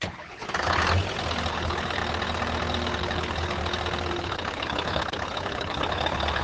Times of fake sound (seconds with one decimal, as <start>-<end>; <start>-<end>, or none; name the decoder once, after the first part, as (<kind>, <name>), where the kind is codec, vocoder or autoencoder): 0.0-0.8 (codec, HILCodec); 1.5-2.0; 3.0-3.6; 4.1-6.4